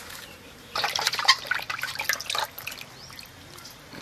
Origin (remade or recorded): recorded